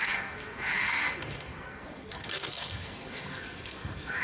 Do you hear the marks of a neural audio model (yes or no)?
yes